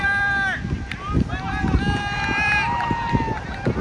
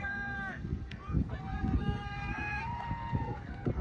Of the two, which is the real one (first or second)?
first